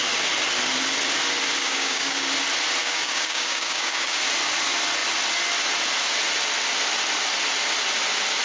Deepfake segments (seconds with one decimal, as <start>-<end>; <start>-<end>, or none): 1.6-2.3; 2.8-4.2